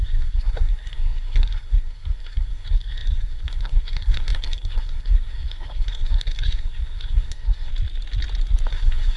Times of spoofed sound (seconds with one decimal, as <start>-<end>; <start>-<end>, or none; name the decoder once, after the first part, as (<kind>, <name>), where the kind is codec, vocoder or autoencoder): 0.0-7.7 (codec, SNAC); 8.7-9.2